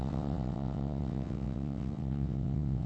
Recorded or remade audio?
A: remade